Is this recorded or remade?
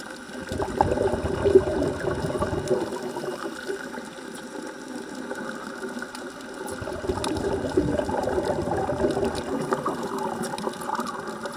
recorded